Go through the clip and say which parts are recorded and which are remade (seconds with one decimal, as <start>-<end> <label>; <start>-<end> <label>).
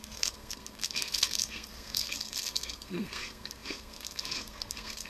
0.0-5.1 remade